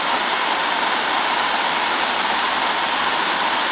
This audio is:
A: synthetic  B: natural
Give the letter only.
B